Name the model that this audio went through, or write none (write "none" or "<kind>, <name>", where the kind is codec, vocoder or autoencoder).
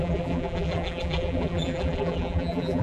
vocoder, BigVGAN v2